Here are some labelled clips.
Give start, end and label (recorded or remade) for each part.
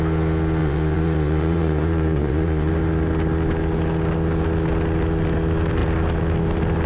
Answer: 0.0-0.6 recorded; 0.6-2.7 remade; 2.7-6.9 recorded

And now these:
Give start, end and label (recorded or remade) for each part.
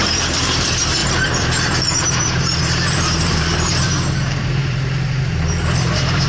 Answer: 0.0-6.3 remade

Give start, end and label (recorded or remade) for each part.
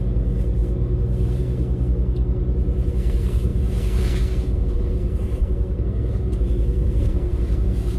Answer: 0.0-2.4 remade; 2.4-2.9 recorded; 2.9-8.0 remade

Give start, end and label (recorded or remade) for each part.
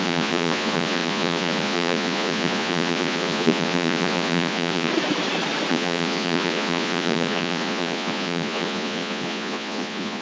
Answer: 0.0-4.9 remade; 4.9-5.7 recorded; 5.7-10.2 remade